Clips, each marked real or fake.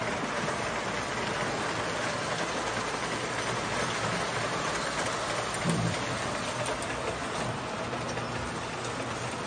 real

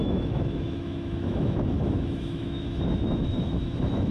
fake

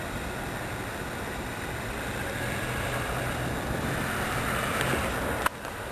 real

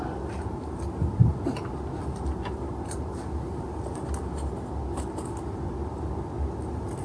real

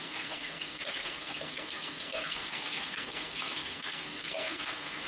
fake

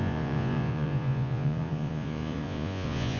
fake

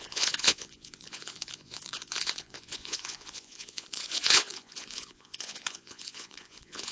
fake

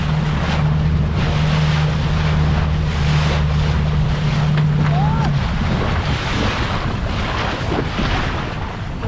real